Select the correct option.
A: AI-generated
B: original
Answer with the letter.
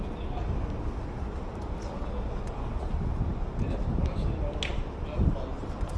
B